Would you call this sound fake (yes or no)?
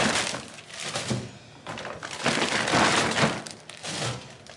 no